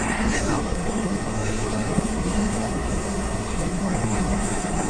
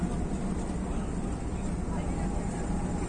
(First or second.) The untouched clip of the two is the second